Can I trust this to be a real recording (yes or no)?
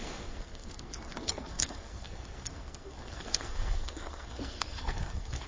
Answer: no